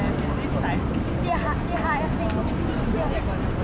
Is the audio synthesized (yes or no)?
no